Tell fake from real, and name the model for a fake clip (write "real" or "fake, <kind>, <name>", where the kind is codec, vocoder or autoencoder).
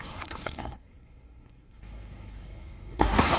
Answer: fake, codec, SNAC